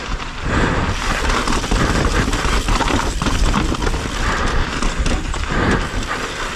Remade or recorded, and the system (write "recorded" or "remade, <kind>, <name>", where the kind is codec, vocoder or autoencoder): remade, vocoder, BigVGAN v2